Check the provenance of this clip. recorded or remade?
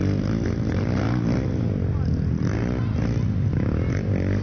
recorded